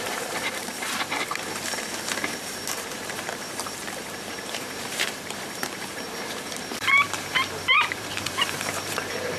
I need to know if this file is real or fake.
fake